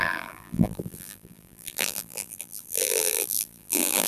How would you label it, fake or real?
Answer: fake